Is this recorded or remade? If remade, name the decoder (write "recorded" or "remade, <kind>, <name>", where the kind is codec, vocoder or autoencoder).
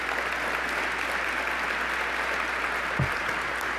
recorded